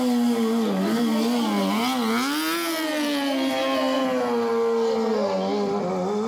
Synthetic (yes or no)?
no